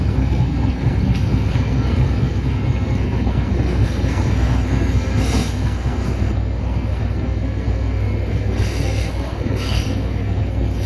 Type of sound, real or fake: fake